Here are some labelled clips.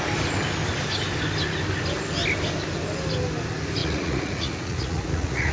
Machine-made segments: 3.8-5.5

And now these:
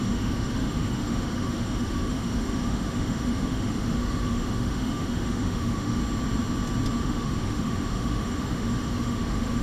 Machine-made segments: 0.0-6.0; 7.0-9.6

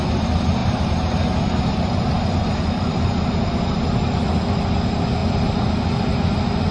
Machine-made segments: none